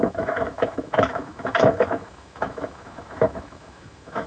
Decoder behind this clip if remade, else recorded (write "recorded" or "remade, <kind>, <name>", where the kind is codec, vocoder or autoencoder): remade, autoencoder, DAC-VAE